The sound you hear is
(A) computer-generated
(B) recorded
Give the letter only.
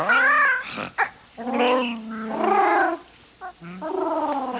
B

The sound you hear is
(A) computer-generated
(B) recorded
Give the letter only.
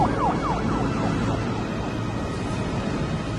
B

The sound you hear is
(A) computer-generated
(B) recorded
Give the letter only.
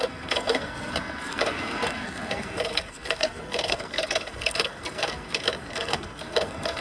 A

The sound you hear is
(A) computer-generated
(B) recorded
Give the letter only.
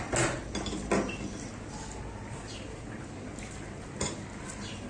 B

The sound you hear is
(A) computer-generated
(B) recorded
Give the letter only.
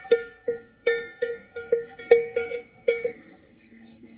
A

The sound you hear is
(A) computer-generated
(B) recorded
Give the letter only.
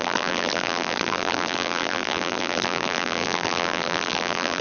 A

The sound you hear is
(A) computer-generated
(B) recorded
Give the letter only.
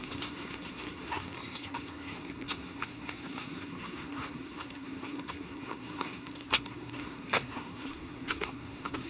A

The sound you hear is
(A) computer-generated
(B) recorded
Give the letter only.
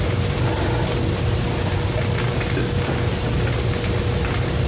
B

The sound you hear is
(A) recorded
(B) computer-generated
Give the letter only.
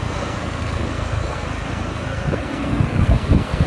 B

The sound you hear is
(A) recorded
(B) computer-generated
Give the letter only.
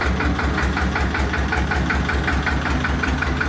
A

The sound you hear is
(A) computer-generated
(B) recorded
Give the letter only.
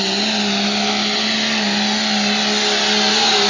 B